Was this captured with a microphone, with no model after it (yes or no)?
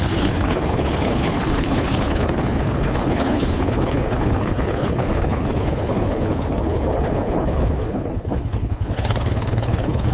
no